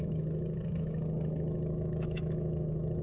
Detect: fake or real fake